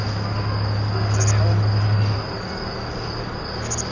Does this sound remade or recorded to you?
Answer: recorded